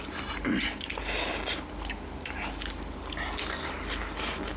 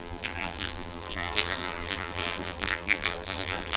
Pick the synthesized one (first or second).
second